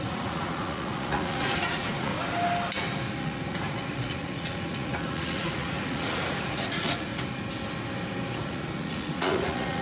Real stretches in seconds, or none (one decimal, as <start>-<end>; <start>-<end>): 2.1-3.2; 7.1-8.4